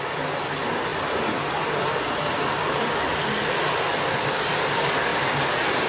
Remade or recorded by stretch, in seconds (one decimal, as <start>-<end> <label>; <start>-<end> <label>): 0.0-5.9 recorded